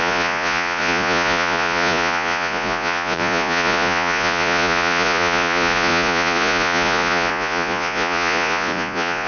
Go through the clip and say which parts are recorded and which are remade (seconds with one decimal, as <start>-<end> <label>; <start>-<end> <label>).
0.0-9.3 remade